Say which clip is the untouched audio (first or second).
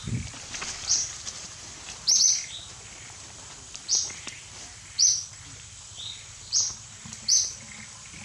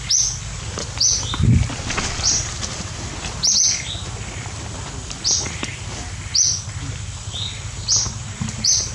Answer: second